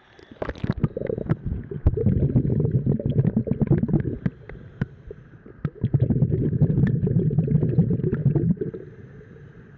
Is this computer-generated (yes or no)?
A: no